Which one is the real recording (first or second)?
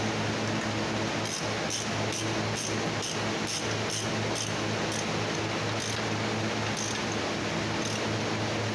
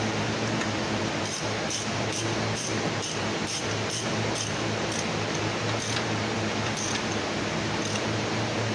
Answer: first